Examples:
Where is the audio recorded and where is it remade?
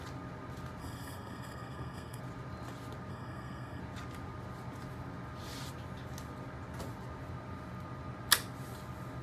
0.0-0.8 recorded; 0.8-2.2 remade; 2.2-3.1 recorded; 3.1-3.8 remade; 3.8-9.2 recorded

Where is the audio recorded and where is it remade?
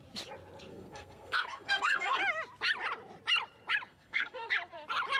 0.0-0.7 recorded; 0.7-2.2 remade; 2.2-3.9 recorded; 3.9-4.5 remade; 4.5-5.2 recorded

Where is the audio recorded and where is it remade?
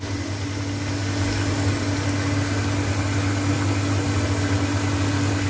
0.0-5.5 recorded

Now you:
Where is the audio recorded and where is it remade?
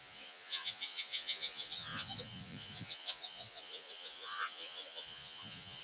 0.0-5.8 remade